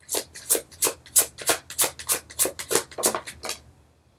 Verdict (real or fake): real